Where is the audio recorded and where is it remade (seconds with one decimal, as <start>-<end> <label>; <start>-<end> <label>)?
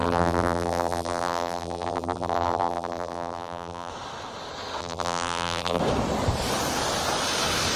0.0-3.9 remade; 3.9-4.8 recorded; 4.8-5.8 remade; 5.8-7.8 recorded